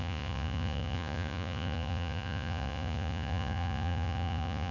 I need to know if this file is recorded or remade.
remade